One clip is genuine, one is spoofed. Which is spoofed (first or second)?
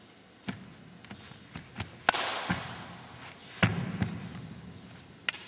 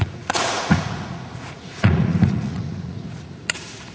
second